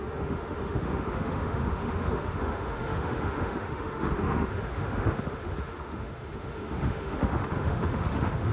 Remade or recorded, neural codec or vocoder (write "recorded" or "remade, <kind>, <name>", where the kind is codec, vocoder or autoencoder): remade, autoencoder, DAC-VAE